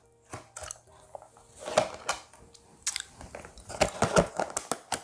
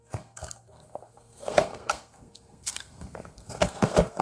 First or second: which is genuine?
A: first